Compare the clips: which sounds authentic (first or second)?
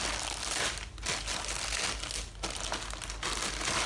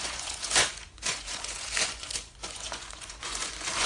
first